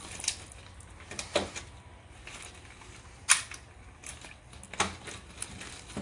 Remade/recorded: recorded